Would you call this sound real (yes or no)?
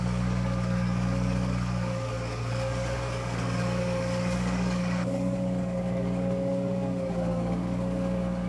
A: no